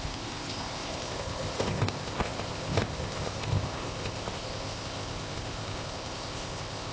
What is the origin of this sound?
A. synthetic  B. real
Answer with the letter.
A